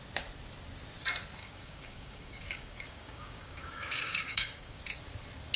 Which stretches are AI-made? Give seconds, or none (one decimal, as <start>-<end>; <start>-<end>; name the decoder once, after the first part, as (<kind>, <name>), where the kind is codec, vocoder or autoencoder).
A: 1.4-4.8 (codec, DAC)